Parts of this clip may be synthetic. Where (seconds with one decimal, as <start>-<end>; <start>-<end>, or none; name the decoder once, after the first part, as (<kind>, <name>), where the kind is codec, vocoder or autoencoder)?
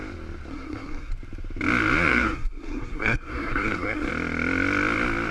0.5-1.1 (codec, SNAC); 2.1-4.1